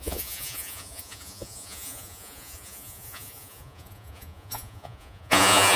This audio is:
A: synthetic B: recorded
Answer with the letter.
A